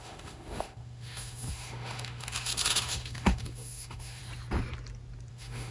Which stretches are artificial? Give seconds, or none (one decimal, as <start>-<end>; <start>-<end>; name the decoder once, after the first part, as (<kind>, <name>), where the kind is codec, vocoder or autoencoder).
0.0-4.2 (autoencoder, DAC-VAE); 5.3-5.7